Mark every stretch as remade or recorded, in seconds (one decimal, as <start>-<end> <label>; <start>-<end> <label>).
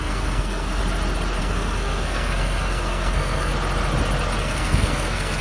0.0-0.8 remade; 0.8-1.4 recorded; 1.4-3.5 remade; 3.5-4.4 recorded; 4.4-5.4 remade